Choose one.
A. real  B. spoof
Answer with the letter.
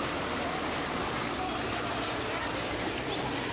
A